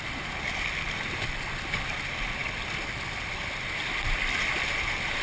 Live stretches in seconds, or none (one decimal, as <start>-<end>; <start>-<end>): 0.0-5.2